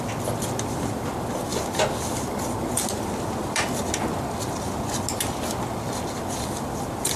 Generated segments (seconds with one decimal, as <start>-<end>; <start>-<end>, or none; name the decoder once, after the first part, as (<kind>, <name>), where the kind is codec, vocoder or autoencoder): none